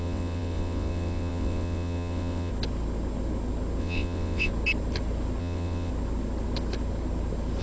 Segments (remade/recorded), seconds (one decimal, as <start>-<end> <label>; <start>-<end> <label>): 0.0-2.5 remade; 2.5-3.8 recorded; 3.8-4.5 remade; 4.5-5.4 recorded; 5.4-5.9 remade; 5.9-7.6 recorded

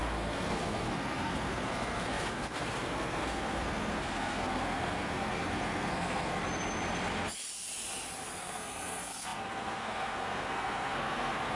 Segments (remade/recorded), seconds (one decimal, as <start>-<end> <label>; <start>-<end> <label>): 0.0-6.4 remade; 6.4-8.4 recorded; 8.4-11.6 remade

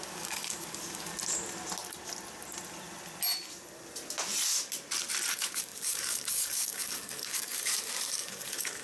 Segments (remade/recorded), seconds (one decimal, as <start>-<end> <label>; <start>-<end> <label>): 0.0-1.1 remade; 1.1-5.3 recorded; 5.3-8.8 remade